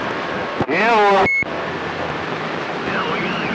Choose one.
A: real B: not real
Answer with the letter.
A